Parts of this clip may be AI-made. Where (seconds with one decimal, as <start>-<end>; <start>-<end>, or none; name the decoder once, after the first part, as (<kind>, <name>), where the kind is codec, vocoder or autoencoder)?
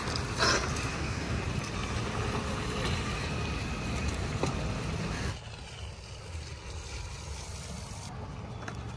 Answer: 0.9-1.4 (codec, DAC)